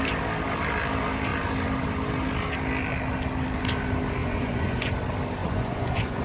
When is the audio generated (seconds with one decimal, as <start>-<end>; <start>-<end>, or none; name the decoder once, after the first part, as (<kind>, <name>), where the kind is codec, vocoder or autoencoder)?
4.2-4.9 (vocoder, Vocos); 5.4-6.2